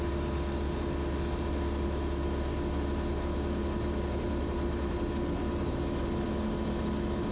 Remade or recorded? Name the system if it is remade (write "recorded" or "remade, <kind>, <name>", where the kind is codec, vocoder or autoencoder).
recorded